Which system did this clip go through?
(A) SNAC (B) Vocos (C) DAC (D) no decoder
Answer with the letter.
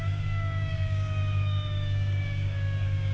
C